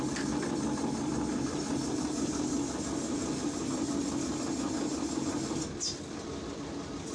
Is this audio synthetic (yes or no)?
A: no